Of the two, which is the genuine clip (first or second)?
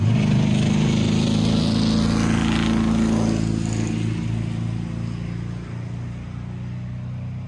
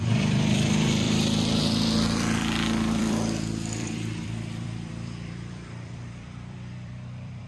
first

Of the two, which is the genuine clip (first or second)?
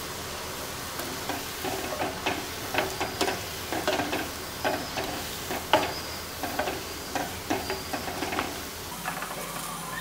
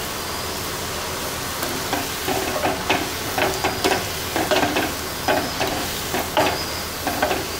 second